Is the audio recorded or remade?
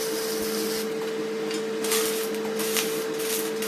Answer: recorded